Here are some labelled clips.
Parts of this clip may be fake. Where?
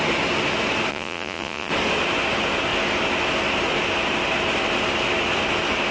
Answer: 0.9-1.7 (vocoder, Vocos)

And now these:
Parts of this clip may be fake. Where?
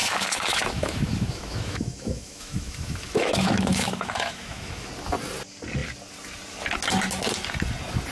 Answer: 0.0-4.9 (autoencoder, DAC-VAE)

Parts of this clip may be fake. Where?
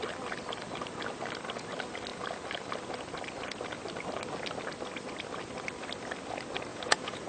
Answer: 6.7-7.3 (vocoder, Vocos)